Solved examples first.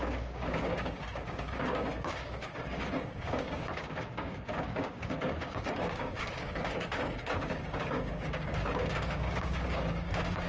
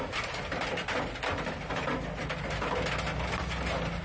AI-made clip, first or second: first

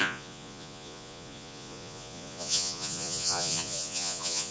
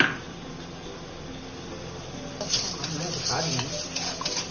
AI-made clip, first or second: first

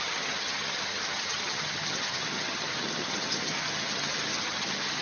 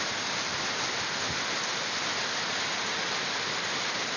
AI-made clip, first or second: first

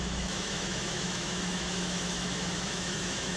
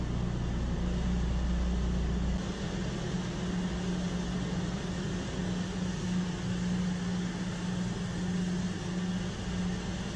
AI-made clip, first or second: first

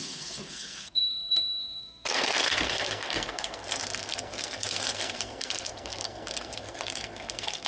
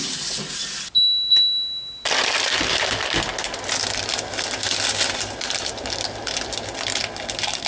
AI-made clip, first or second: first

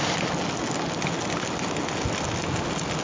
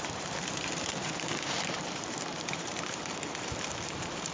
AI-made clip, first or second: second